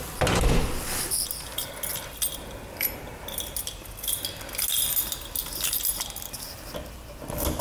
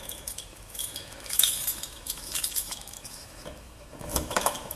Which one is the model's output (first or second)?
second